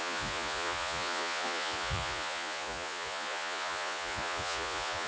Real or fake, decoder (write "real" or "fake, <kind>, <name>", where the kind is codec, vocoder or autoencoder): fake, vocoder, Vocos